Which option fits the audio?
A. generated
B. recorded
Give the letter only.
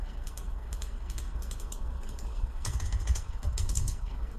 A